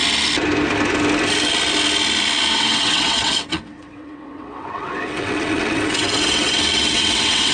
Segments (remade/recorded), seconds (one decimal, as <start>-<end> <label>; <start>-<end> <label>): 0.0-2.5 recorded; 2.5-7.5 remade